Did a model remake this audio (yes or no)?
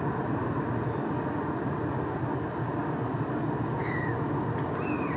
no